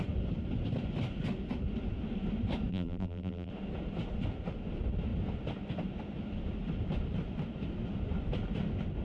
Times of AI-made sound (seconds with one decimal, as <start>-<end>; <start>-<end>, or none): 2.7-3.5